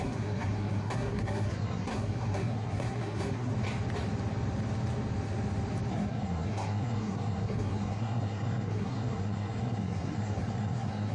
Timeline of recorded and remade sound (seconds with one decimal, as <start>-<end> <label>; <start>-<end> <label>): 0.0-3.5 remade; 3.5-5.9 recorded; 5.9-11.1 remade